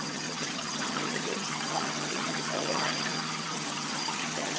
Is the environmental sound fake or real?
fake